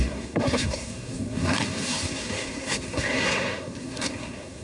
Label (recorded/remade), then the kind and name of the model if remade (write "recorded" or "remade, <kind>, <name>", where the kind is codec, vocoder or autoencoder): remade, codec, SNAC